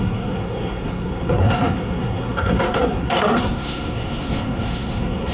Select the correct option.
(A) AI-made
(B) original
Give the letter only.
A